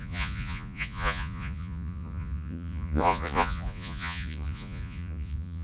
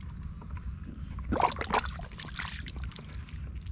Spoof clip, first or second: first